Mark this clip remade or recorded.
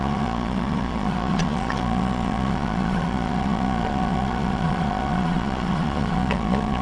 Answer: remade